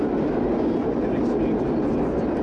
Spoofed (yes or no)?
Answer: no